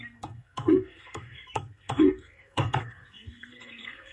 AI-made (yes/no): yes